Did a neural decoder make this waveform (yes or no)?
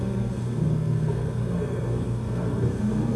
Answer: yes